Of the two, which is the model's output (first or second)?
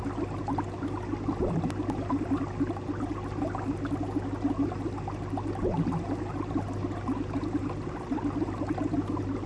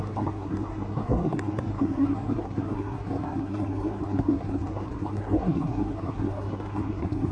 second